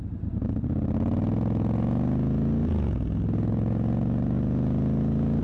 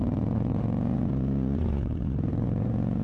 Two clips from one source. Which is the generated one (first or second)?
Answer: second